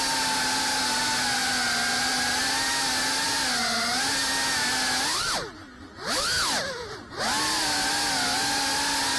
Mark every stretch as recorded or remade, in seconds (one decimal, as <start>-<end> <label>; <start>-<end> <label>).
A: 0.0-1.4 recorded; 1.4-2.4 remade; 2.4-9.2 recorded